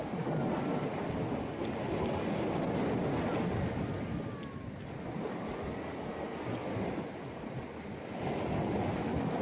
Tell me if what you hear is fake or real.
real